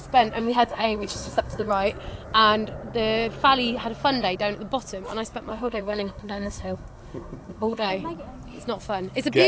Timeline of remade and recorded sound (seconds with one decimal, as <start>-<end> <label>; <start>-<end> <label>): 0.0-0.4 recorded; 0.4-1.7 remade; 1.7-5.5 recorded; 5.5-7.9 remade; 7.9-9.5 recorded